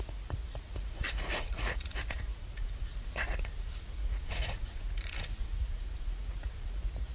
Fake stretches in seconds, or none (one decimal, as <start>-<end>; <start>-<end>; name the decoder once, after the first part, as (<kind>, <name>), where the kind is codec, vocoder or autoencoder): 0.0-7.1 (vocoder, Vocos)

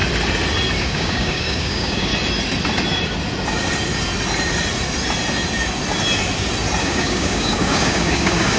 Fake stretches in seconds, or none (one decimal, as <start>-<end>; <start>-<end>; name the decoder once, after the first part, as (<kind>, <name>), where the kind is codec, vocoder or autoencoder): 0.8-2.1 (codec, DAC); 6.8-8.6

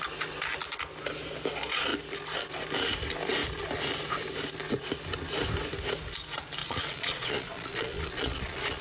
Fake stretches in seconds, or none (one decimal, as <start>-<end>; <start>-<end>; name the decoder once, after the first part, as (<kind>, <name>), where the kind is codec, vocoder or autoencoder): 6.6-8.8 (vocoder, Vocos)

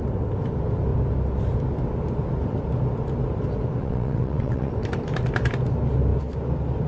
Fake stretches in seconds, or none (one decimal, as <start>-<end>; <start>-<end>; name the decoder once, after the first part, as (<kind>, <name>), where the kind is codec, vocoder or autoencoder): 3.8-4.7 (vocoder, WaveNeXt)

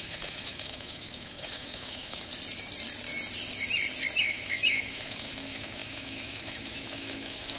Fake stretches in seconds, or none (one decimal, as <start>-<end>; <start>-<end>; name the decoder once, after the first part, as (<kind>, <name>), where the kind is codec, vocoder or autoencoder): 0.0-2.3 (autoencoder, DAC-VAE); 4.2-7.6

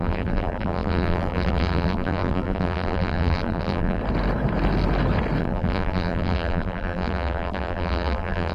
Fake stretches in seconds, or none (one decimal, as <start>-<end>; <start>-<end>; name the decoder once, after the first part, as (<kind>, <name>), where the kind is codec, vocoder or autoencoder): 0.0-4.0 (vocoder, BigVGAN v2); 5.4-8.5

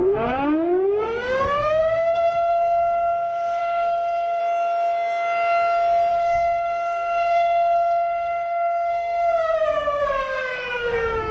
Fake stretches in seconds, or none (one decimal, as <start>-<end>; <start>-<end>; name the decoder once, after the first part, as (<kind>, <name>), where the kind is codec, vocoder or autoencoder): 0.0-4.4 (codec, SNAC); 6.1-11.3

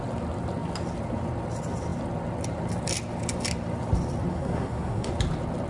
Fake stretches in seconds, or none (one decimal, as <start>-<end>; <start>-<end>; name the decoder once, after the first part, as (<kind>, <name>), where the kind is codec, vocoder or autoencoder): 4.3-5.1 (codec, SNAC)